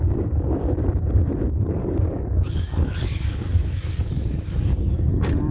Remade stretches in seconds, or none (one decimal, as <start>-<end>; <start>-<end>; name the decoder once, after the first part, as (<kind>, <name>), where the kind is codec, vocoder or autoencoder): 1.8-5.1 (codec, DAC)